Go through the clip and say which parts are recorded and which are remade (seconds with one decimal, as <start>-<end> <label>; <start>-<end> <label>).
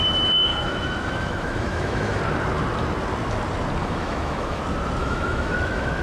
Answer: 0.0-0.5 recorded; 0.5-2.2 remade; 2.2-3.8 recorded; 3.8-4.6 remade; 4.6-5.0 recorded; 5.0-6.0 remade